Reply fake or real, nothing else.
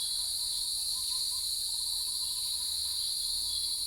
real